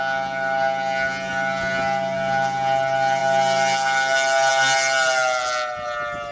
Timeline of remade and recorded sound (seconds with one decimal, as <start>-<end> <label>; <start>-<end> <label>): 0.0-6.3 recorded